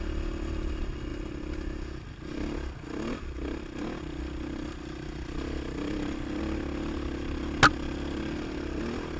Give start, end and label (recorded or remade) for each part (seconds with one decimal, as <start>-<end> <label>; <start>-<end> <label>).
0.0-9.2 recorded